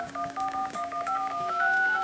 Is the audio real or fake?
fake